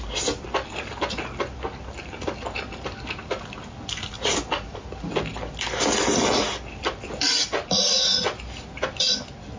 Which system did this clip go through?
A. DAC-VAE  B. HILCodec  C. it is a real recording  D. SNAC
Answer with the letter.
C